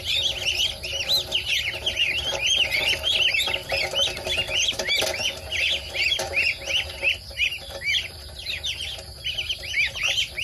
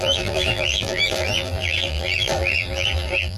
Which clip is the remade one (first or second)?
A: second